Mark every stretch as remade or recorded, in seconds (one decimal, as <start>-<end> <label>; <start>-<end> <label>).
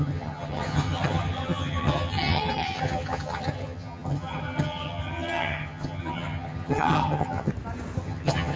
0.0-7.5 remade; 7.5-8.0 recorded; 8.0-8.6 remade